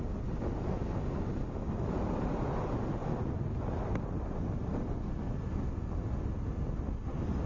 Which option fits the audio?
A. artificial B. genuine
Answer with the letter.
B